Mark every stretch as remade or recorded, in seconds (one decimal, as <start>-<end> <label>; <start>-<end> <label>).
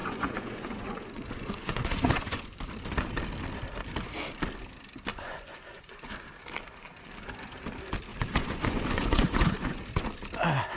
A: 0.0-2.6 remade; 2.6-5.1 recorded; 5.1-6.1 remade; 6.1-8.1 recorded; 8.1-9.8 remade; 9.8-10.8 recorded